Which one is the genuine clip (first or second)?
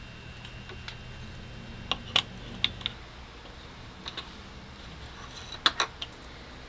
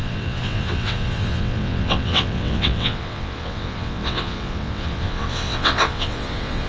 first